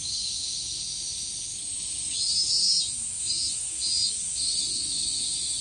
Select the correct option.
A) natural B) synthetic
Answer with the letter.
B